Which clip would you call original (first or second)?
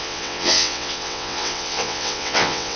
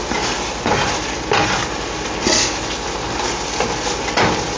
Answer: second